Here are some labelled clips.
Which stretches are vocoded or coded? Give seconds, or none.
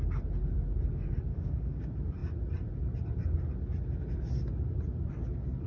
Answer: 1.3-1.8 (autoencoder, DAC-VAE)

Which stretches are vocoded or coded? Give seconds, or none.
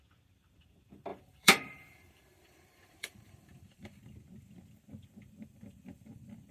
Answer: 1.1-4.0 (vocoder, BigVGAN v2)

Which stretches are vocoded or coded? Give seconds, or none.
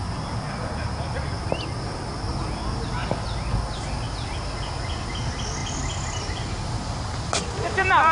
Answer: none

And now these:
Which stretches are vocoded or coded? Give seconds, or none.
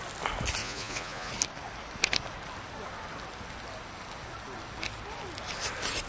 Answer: 0.6-1.3 (vocoder, Vocos)